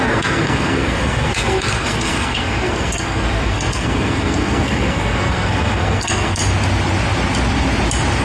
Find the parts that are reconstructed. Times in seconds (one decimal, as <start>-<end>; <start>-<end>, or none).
0.0-6.4